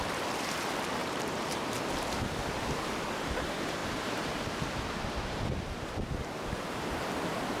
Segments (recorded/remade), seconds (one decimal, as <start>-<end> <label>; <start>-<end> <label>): 0.0-1.0 recorded; 1.0-1.6 remade; 1.6-7.6 recorded